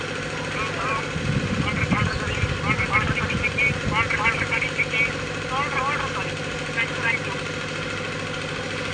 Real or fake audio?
real